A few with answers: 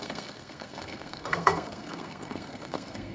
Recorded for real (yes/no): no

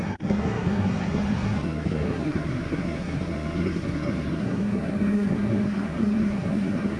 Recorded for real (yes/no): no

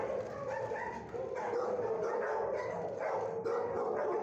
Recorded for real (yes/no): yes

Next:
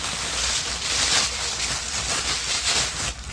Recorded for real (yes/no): yes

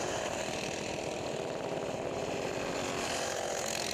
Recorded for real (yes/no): yes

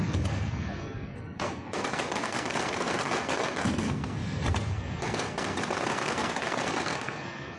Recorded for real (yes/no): no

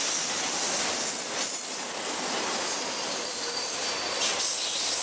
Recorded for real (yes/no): yes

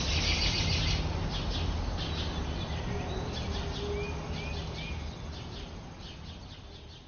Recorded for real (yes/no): yes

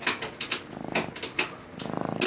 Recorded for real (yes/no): yes